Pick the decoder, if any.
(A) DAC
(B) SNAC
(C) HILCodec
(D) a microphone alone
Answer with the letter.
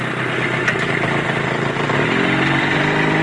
D